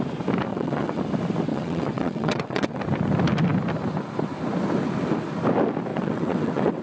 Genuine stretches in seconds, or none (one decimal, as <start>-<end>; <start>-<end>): 0.0-0.5; 1.0-1.5; 2.8-5.9